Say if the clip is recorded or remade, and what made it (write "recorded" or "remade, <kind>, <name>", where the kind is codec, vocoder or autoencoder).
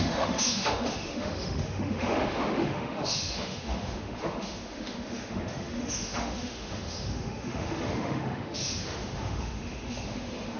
remade, autoencoder, DAC-VAE